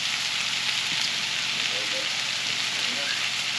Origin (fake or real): real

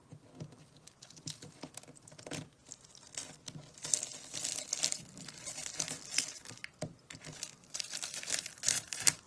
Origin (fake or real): real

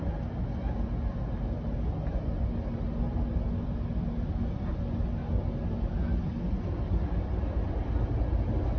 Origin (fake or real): real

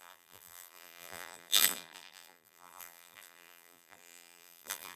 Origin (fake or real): fake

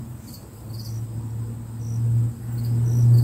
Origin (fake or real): real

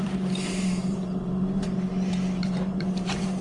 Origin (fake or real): fake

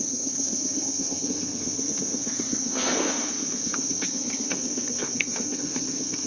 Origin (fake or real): fake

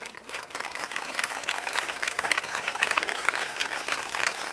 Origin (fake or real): fake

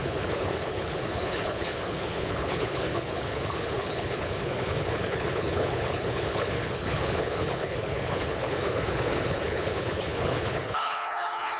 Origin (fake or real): fake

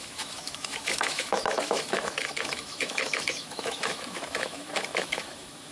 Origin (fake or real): fake